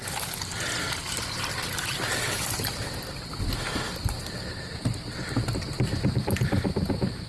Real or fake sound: real